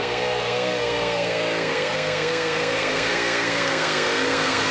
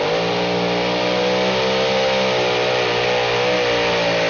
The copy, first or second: first